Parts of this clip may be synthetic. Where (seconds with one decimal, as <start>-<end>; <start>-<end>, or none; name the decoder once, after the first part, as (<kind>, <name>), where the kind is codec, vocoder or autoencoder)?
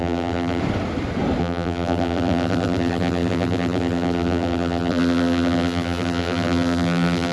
0.0-0.6 (vocoder, BigVGAN v2); 1.4-7.3